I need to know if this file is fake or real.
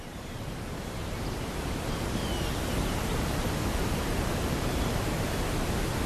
fake